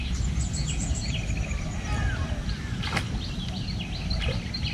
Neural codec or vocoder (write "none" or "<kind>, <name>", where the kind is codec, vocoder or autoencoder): none